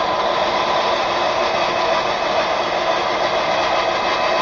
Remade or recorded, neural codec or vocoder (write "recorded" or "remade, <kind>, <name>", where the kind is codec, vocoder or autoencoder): recorded